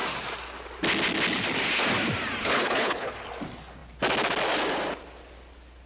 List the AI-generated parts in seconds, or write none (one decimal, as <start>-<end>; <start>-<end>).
2.4-3.1